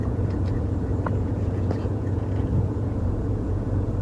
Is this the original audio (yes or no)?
no